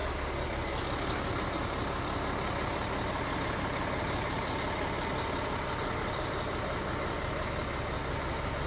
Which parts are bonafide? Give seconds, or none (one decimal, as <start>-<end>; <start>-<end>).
0.0-8.7